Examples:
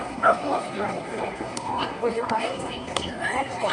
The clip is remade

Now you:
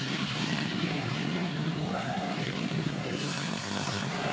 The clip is remade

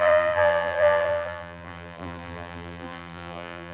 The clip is remade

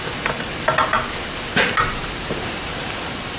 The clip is recorded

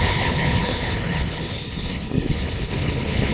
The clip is remade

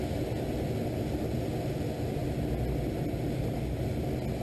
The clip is recorded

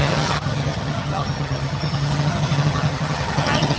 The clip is remade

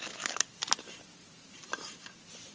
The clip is remade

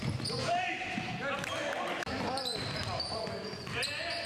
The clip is recorded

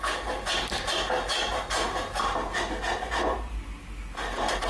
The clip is recorded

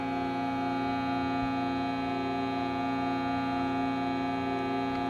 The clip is recorded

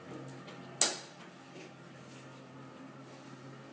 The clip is recorded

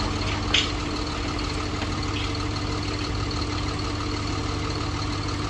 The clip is recorded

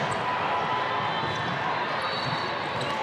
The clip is recorded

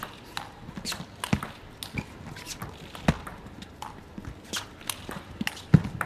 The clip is recorded